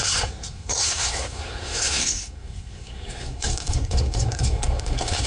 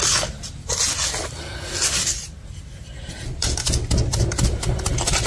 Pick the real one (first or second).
second